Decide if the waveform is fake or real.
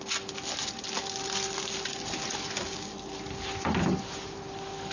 real